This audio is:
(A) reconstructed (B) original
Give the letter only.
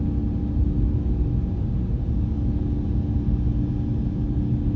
B